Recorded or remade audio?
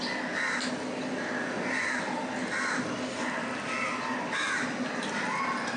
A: recorded